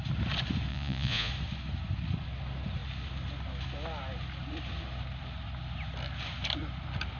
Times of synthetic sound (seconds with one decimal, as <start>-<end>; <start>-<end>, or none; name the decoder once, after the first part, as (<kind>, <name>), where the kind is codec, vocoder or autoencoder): 0.7-1.3 (vocoder, Vocos)